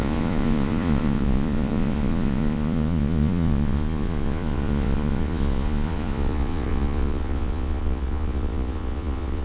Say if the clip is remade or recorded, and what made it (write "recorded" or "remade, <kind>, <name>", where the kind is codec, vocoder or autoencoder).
remade, vocoder, Vocos